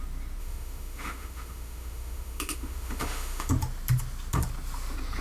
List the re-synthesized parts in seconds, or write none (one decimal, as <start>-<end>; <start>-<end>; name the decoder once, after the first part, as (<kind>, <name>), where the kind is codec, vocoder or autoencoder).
0.4-3.5 (autoencoder, DAC-VAE)